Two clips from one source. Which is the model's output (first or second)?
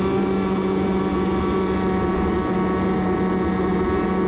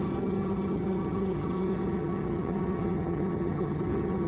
second